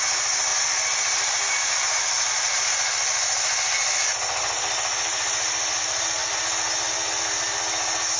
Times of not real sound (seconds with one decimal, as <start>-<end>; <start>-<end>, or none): none